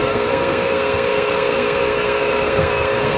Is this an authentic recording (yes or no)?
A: no